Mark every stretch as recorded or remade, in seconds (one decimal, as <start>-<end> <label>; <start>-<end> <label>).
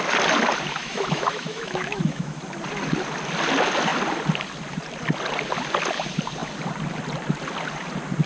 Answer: 0.0-0.8 recorded; 0.8-2.4 remade; 2.4-8.3 recorded